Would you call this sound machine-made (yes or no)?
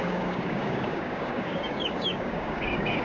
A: yes